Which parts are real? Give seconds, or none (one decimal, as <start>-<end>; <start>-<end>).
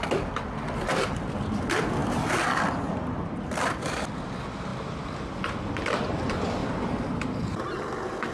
4.7-5.4